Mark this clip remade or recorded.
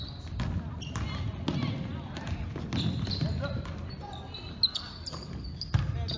recorded